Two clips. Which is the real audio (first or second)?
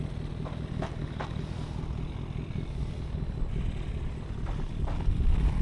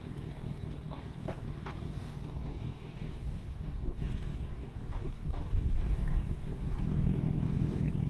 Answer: first